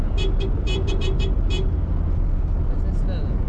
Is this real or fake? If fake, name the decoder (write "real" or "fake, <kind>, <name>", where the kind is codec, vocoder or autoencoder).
real